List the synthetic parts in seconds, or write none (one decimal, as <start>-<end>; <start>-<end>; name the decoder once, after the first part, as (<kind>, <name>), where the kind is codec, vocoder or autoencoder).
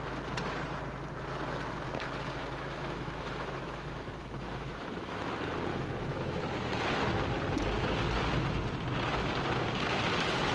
2.4-5.3 (autoencoder, DAC-VAE); 5.7-6.4